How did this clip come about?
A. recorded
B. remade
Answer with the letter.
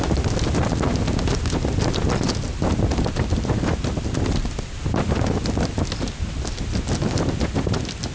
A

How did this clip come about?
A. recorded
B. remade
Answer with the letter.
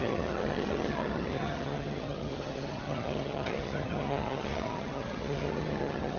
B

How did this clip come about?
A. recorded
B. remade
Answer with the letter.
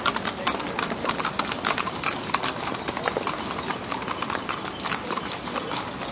A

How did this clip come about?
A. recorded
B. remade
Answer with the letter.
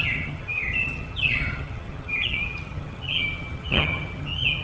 B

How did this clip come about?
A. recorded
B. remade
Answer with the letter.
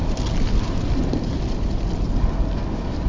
A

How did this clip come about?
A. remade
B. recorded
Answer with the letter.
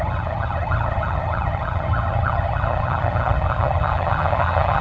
A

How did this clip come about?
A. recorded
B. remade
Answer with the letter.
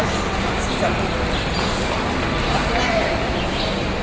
A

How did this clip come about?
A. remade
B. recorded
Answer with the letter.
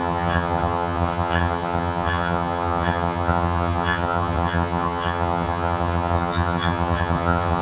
A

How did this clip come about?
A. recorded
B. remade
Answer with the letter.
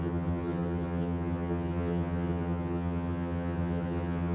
B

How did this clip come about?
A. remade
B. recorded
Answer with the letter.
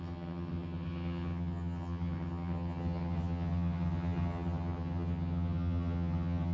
A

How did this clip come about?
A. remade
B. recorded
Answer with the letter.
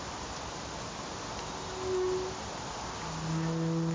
B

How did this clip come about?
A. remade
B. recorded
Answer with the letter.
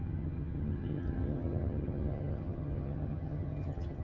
A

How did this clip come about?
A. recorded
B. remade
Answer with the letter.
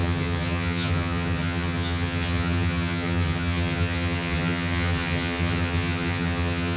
B